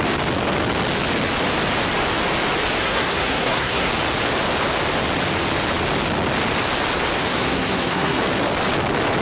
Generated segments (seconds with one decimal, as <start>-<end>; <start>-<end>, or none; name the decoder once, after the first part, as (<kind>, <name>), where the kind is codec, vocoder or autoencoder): 2.8-3.9 (codec, SNAC); 7.3-8.2